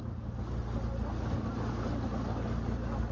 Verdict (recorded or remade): recorded